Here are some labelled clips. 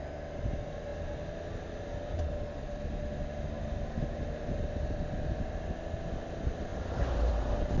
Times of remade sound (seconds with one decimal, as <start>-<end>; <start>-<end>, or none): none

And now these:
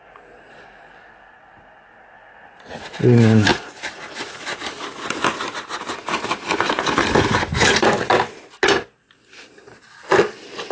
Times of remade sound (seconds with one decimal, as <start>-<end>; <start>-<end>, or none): 3.5-4.4

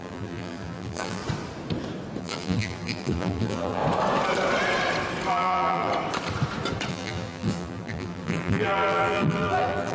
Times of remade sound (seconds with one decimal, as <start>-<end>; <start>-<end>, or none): 0.0-1.2; 2.2-3.8; 5.3-5.9; 6.9-9.9

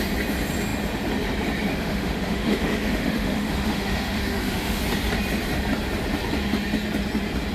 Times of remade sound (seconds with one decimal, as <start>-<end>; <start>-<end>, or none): 1.7-4.8

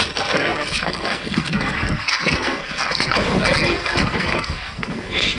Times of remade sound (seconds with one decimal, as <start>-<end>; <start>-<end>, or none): 0.0-5.4

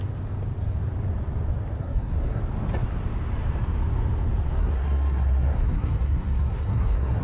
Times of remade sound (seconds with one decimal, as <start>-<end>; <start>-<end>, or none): 1.8-2.4; 4.6-7.2

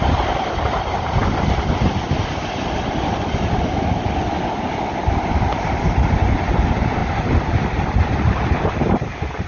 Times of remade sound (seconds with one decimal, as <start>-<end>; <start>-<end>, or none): none

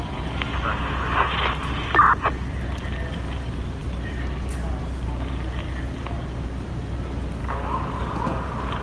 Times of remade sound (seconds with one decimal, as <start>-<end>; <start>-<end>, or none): 7.4-8.1